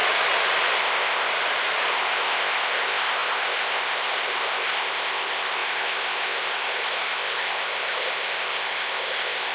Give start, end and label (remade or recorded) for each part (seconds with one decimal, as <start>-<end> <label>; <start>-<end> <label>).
0.0-0.8 recorded; 0.8-1.3 remade; 1.3-1.9 recorded; 1.9-9.5 remade